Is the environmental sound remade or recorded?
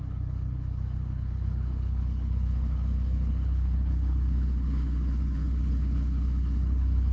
remade